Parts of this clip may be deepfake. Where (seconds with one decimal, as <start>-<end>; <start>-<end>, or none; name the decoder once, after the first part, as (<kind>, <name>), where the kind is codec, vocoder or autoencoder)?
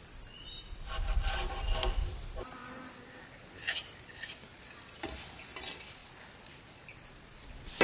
none